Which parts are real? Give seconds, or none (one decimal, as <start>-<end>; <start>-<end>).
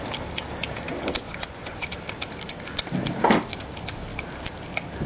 0.0-1.2; 1.9-5.1